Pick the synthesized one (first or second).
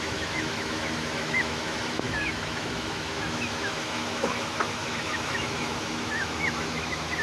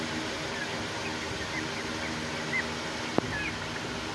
first